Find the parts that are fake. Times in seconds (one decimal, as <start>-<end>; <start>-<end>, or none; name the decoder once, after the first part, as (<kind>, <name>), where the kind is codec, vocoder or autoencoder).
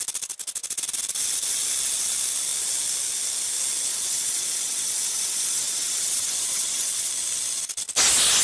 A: 3.9-7.1 (vocoder, WaveNeXt)